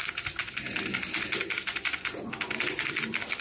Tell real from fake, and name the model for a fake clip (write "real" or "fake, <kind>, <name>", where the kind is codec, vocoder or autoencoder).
fake, vocoder, BigVGAN v2